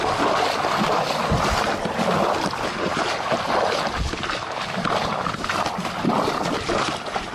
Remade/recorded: recorded